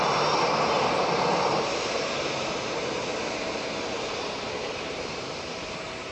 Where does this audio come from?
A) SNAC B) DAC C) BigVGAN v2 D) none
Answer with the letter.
C